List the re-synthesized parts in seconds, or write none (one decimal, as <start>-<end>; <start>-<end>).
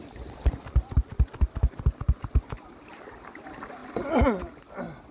none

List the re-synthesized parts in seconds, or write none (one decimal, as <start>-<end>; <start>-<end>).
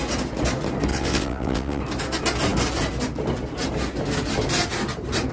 0.9-1.8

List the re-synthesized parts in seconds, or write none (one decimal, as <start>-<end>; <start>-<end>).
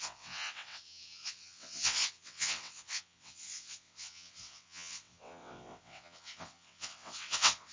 0.0-7.7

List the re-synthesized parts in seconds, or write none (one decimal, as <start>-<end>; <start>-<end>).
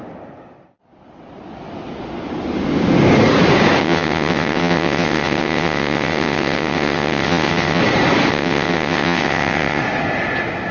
3.8-7.8; 8.3-9.8